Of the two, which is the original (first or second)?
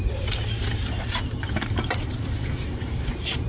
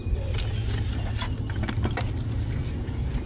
second